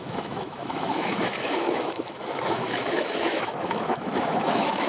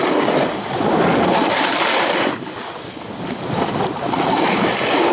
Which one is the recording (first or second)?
second